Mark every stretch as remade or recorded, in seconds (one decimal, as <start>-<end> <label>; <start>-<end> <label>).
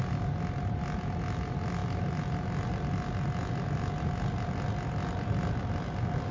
0.0-6.3 recorded